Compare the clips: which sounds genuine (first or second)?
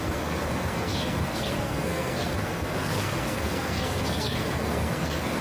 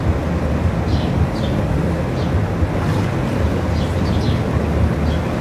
second